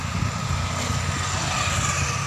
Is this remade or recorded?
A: recorded